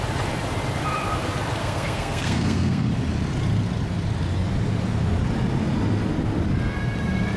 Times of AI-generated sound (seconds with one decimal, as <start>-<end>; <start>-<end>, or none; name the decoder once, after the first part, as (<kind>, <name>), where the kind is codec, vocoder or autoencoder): 1.6-2.9 (codec, SNAC)